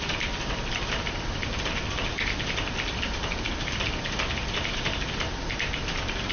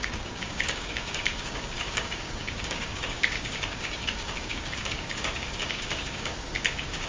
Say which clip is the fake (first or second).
second